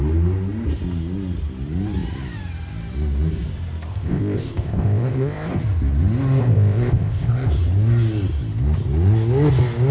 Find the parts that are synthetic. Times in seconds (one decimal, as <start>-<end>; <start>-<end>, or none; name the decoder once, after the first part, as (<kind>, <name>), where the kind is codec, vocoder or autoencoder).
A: 3.9-5.6 (codec, ZipCodec); 6.4-7.5